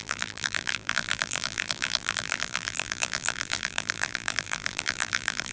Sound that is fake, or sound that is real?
fake